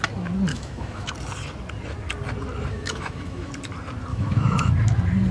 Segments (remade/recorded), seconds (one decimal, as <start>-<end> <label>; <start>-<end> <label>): 0.0-0.5 recorded; 0.5-1.1 remade; 1.1-2.7 recorded; 2.7-3.5 remade; 3.5-4.1 recorded; 4.1-4.7 remade; 4.7-5.3 recorded